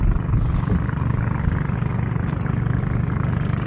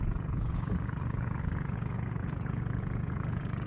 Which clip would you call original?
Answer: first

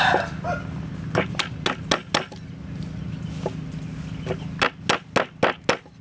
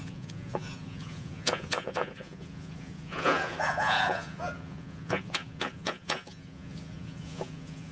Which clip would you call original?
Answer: first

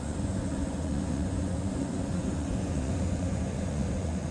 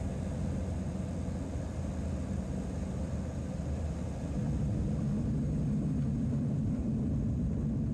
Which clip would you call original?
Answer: second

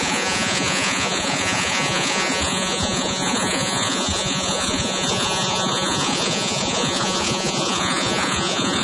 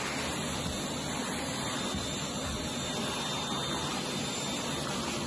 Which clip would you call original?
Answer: second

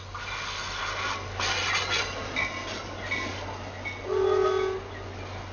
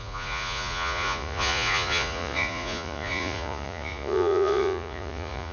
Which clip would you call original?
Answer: first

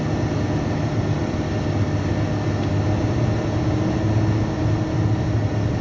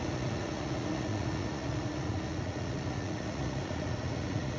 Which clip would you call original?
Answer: first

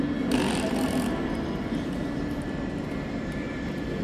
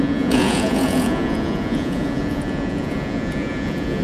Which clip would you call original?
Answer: first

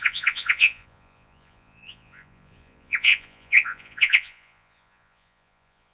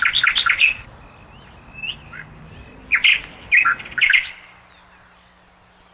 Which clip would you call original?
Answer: second